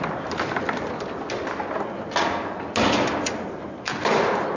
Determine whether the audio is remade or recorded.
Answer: recorded